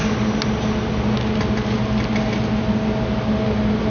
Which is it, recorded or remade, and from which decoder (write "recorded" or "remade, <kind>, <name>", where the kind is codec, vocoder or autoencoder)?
recorded